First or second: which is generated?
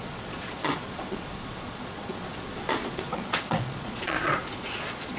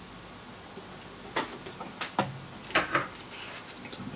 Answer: first